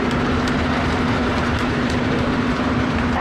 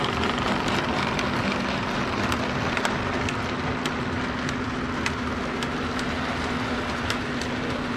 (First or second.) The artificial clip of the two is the first